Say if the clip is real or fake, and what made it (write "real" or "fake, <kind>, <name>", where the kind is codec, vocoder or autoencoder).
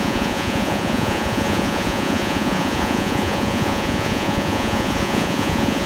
fake, vocoder, Vocos